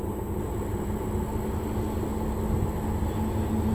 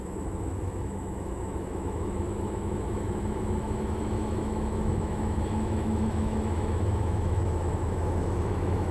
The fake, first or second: second